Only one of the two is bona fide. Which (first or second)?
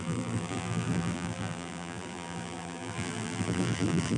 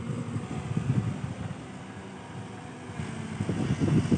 second